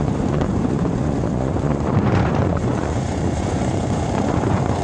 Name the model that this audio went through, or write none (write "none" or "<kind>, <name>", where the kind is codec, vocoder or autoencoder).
vocoder, Vocos